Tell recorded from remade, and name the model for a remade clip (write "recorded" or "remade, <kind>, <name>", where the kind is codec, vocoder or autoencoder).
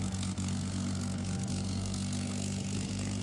remade, codec, SNAC